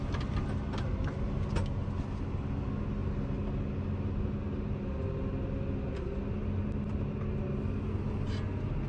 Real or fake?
real